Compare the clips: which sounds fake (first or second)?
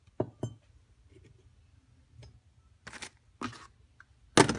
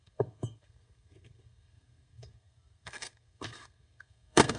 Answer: second